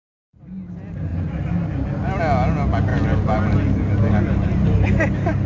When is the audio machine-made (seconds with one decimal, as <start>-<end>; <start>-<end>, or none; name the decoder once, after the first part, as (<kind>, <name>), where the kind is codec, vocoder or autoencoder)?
none